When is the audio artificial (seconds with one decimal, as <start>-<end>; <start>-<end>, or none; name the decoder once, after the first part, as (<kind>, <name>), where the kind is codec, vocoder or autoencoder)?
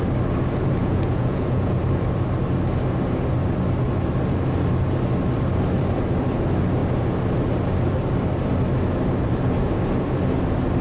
0.8-1.8 (vocoder, Vocos)